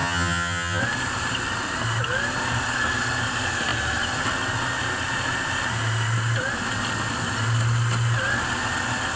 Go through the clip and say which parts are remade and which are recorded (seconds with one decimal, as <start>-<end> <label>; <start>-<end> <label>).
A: 0.0-0.8 remade; 0.8-9.2 recorded